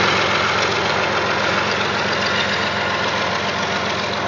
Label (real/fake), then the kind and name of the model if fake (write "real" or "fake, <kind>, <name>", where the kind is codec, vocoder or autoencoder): real